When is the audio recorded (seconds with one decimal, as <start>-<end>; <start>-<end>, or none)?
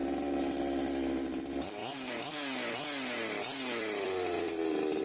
0.0-1.8